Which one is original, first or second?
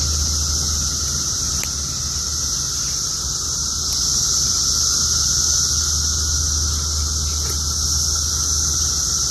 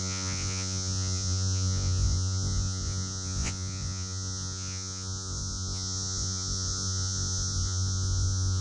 first